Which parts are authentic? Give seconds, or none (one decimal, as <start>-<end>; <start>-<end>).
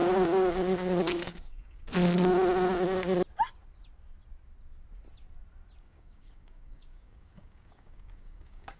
2.0-5.8